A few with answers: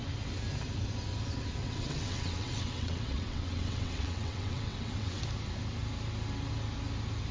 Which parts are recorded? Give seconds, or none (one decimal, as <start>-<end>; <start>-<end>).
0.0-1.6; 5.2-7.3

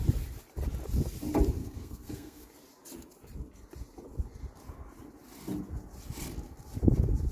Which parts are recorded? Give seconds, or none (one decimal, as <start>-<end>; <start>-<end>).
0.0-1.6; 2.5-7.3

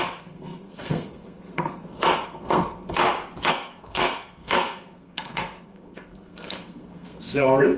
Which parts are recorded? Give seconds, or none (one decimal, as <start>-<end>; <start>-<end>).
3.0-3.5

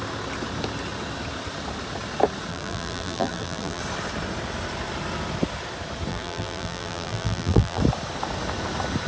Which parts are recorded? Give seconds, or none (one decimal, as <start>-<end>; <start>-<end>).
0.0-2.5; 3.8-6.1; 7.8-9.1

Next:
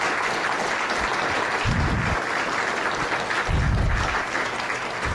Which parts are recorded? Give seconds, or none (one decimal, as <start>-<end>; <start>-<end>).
0.0-5.1

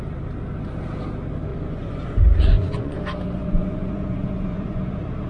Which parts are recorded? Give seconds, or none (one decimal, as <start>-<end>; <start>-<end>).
0.0-1.5; 3.0-3.4; 4.8-5.3